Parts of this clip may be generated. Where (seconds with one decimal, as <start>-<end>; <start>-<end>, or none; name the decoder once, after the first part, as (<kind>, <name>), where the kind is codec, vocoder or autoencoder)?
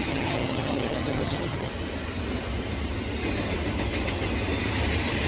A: 0.0-1.7 (vocoder, HiFi-GAN)